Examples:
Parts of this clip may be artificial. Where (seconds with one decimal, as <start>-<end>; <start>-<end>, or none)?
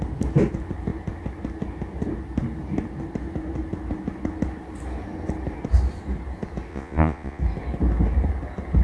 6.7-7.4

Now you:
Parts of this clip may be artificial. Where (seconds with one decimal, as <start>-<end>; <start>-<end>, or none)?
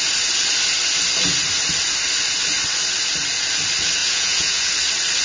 4.0-4.7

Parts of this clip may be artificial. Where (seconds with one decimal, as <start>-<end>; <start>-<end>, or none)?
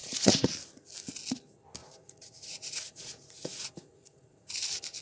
0.0-0.5; 1.8-4.5